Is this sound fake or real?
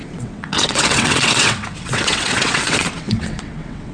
fake